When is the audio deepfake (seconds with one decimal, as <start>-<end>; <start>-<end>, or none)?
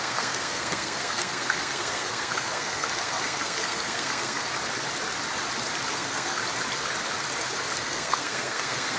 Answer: 0.0-4.4; 5.9-6.4; 7.8-9.0